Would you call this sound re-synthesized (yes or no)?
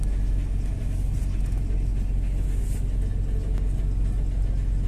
no